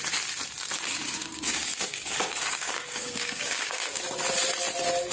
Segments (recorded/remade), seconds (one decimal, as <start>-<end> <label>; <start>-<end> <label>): 0.0-1.2 recorded; 1.2-4.0 remade; 4.0-5.1 recorded